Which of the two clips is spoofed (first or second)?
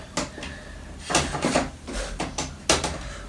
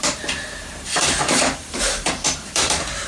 second